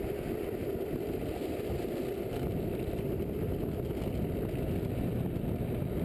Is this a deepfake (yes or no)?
no